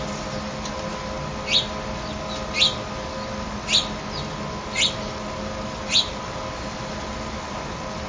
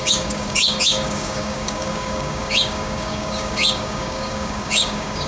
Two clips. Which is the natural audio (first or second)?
first